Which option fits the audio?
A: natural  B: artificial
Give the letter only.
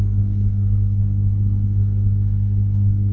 B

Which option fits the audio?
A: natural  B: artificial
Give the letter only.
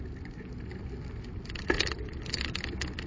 A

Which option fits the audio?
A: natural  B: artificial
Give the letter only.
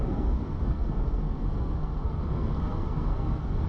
B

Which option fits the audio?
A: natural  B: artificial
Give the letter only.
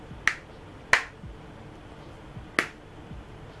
A